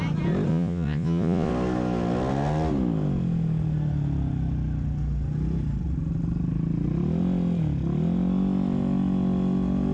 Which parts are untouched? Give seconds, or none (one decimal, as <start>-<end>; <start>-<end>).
0.0-0.5; 1.5-9.9